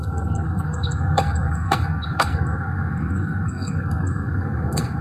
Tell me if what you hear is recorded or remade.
remade